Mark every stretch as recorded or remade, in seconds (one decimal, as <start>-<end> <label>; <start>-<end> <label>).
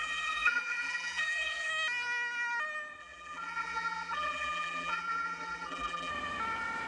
0.0-1.7 remade; 1.7-3.0 recorded; 3.0-6.1 remade; 6.1-6.9 recorded